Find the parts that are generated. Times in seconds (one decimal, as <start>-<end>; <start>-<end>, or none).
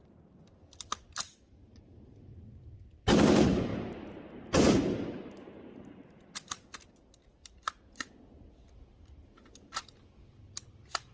none